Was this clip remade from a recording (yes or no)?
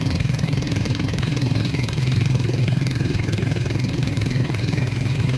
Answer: yes